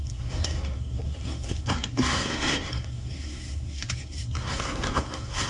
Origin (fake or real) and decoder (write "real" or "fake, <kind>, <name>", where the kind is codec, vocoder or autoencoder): fake, codec, SNAC